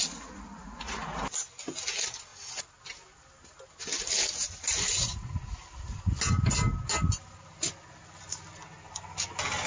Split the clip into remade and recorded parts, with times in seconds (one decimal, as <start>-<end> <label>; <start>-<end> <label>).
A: 0.0-9.7 recorded